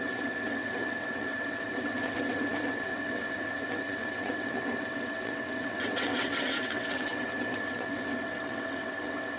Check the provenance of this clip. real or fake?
fake